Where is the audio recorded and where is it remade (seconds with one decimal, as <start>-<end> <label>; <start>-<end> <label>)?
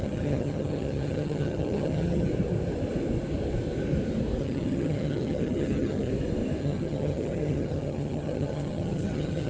0.0-2.3 remade; 2.3-4.4 recorded; 4.4-6.1 remade; 6.1-6.6 recorded; 6.6-9.5 remade